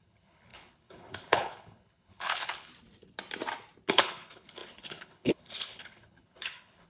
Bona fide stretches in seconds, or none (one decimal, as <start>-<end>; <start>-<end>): 2.7-3.9